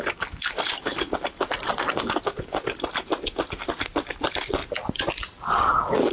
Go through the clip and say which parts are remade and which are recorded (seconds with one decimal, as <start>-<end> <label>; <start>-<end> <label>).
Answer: 0.0-6.1 recorded